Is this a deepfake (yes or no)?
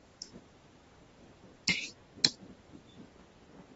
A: no